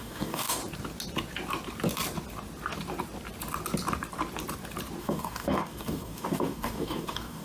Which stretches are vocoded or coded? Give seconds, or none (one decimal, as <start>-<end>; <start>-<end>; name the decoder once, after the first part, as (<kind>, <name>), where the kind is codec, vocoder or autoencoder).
0.0-0.6 (codec, DAC); 5.0-7.4